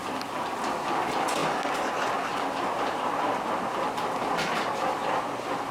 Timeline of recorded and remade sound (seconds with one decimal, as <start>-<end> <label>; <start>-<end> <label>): 0.0-0.6 remade; 0.6-2.3 recorded; 2.3-2.8 remade; 2.8-5.7 recorded

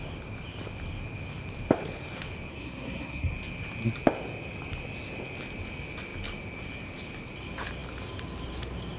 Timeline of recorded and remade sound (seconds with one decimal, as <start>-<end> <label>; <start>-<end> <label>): 0.0-2.5 recorded; 2.5-3.3 remade; 3.3-9.0 recorded

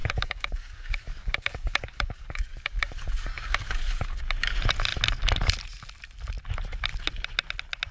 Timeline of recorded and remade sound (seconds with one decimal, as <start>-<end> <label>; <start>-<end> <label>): 0.0-4.2 remade; 4.2-7.9 recorded

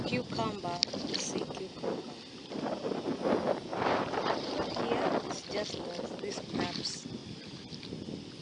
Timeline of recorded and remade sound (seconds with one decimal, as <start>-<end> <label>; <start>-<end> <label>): 0.0-3.7 recorded; 3.7-4.8 remade; 4.8-8.4 recorded

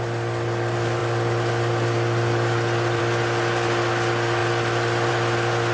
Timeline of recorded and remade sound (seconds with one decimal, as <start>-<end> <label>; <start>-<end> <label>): 0.0-5.7 recorded

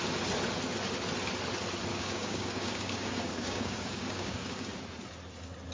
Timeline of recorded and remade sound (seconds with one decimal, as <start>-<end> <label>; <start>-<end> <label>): 0.0-1.9 recorded; 1.9-4.8 remade; 4.8-5.7 recorded

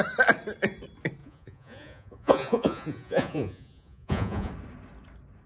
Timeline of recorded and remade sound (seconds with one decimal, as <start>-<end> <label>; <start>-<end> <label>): 0.0-1.2 recorded; 1.2-4.5 remade; 4.5-5.5 recorded